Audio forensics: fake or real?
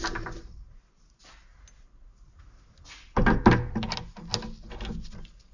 real